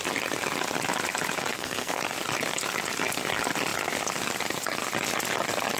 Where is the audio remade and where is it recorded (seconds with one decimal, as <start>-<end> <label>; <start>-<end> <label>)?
0.0-1.5 recorded; 1.5-2.0 remade; 2.0-5.8 recorded